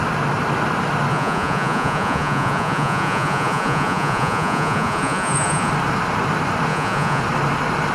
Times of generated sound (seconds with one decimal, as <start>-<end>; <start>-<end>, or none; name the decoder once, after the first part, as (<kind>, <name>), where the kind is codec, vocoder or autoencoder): 1.1-5.7 (vocoder, Vocos); 6.7-7.2